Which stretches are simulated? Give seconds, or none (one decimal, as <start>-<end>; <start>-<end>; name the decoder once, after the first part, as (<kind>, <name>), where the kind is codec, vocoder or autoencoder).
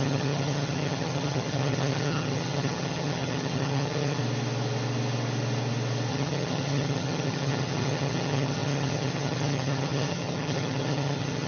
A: 0.0-4.2 (vocoder, HiFi-GAN); 6.1-11.5